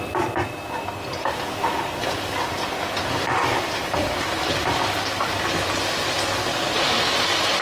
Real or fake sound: real